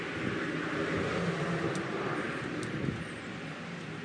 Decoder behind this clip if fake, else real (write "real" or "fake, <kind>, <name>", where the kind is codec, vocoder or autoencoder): real